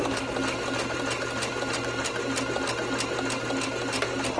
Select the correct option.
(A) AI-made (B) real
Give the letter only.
B